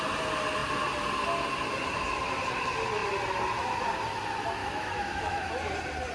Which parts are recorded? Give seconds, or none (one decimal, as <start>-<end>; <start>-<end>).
0.0-4.6; 5.5-6.1